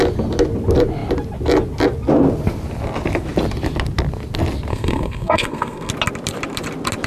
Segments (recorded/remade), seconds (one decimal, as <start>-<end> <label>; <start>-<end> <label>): 0.0-4.7 recorded; 4.7-5.9 remade; 5.9-7.1 recorded